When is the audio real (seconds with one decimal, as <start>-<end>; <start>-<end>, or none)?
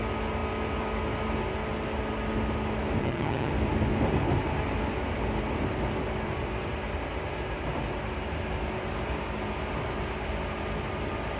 0.0-3.0; 3.5-11.4